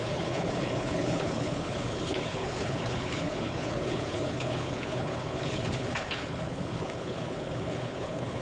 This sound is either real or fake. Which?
fake